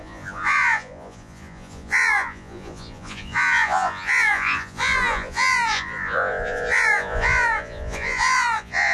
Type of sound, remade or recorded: remade